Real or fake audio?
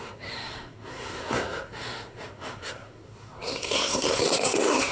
fake